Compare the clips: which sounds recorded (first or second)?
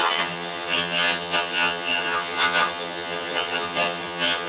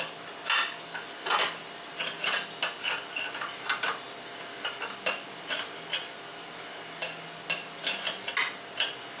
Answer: second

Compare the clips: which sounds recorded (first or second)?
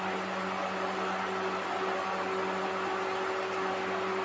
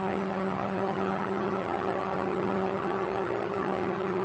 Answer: first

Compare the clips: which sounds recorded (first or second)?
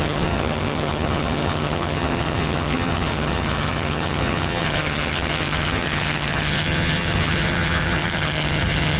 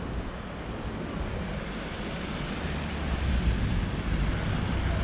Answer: second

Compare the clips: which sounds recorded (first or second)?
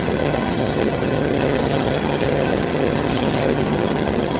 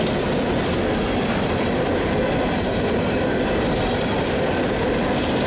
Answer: second